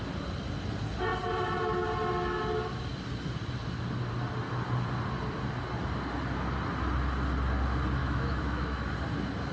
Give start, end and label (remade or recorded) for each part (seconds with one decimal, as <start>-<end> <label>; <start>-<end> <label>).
0.0-8.0 recorded; 8.0-8.9 remade; 8.9-9.5 recorded